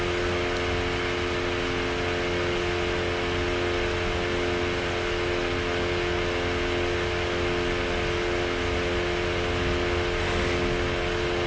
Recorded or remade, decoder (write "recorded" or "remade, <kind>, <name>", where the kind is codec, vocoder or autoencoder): recorded